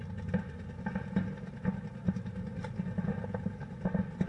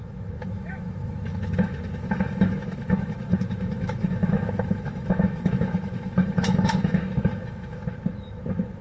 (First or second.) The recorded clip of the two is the first